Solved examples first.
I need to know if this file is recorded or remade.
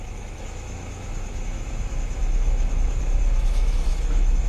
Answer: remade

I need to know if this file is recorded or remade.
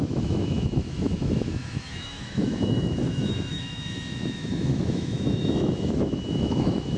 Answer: remade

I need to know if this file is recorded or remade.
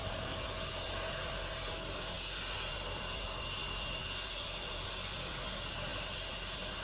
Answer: recorded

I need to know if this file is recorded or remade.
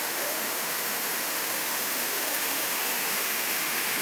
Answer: remade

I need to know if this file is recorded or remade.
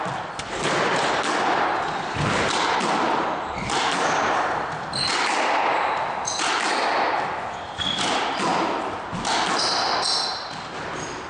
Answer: recorded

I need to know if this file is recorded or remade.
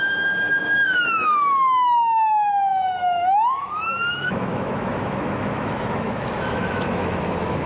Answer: remade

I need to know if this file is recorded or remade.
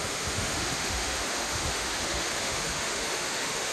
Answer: remade